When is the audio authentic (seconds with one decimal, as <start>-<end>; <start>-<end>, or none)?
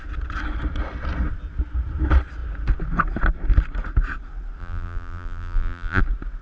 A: 0.0-4.6; 6.0-6.4